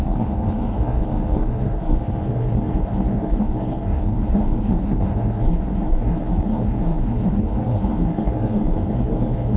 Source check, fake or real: fake